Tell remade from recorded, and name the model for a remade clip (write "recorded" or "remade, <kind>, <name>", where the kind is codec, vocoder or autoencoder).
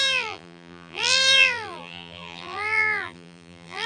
remade, vocoder, BigVGAN v2